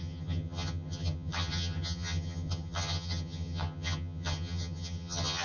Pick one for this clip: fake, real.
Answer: fake